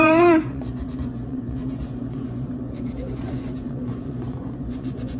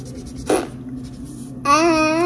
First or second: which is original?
second